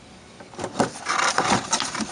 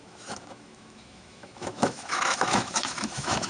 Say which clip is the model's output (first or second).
second